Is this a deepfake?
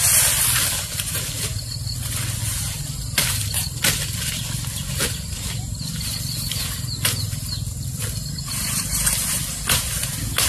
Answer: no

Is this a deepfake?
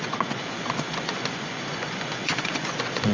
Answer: yes